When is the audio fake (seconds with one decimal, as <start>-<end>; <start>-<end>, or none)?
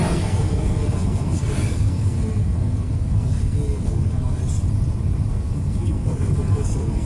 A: 0.0-4.4; 5.3-7.1